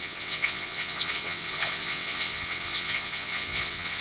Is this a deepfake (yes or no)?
yes